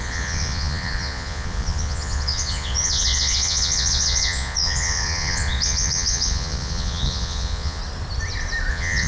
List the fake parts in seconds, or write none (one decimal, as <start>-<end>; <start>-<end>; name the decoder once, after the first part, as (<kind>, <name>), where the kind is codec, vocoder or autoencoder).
0.0-7.8 (vocoder, Vocos); 8.7-9.1